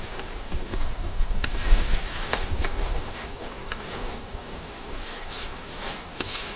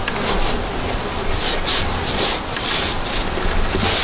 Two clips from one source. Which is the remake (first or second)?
first